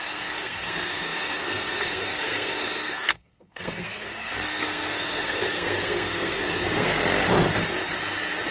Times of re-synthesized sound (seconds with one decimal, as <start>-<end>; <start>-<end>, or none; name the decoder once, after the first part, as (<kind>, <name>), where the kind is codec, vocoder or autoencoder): 0.0-7.0 (codec, SNAC)